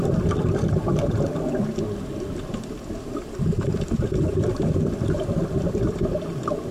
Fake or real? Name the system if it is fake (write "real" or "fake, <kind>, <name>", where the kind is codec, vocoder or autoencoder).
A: fake, vocoder, BigVGAN v2